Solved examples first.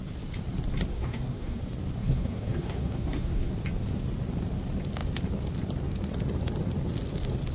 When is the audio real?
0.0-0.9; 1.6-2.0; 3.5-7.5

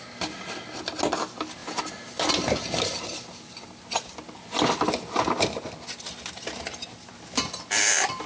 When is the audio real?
0.0-8.3

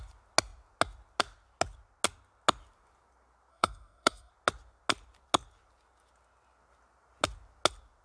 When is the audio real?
0.0-3.5; 4.3-8.0